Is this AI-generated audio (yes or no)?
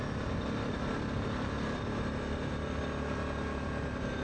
no